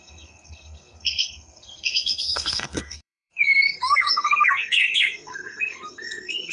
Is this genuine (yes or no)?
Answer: no